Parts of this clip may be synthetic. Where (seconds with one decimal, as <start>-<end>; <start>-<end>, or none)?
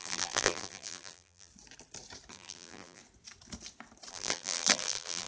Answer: 0.0-1.5; 2.3-3.0; 4.1-5.3